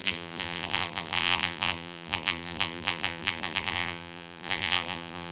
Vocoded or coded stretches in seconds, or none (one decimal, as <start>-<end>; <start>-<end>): 0.0-5.3